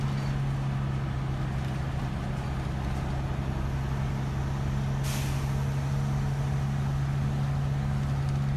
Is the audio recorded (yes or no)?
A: yes